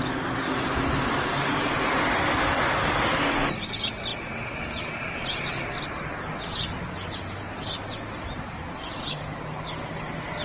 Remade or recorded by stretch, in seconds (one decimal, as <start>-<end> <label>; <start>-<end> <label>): 0.0-10.4 recorded